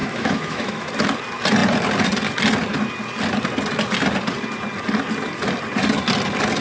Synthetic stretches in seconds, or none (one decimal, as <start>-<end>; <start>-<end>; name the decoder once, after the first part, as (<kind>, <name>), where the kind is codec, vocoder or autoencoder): 0.0-0.9 (autoencoder, DAC-VAE)